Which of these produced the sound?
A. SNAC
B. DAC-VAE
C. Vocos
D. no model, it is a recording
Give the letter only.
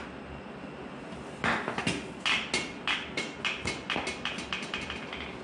D